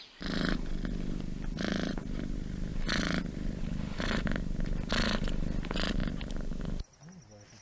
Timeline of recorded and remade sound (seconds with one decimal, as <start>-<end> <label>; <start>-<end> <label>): 0.0-7.6 recorded